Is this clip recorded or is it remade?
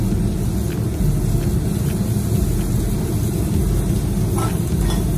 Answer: recorded